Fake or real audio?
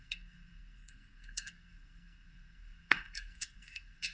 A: fake